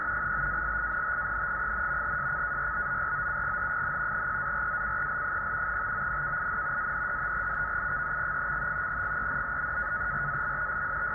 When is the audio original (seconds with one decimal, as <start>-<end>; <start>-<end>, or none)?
0.0-0.6; 3.7-7.7; 8.4-11.1